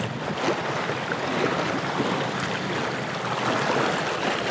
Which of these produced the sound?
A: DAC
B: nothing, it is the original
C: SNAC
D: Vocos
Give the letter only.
B